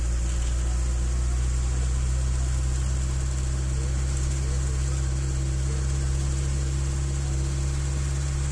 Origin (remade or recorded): recorded